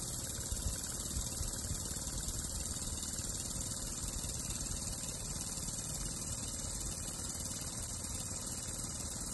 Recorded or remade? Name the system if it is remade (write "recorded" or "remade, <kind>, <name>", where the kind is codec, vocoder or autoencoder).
recorded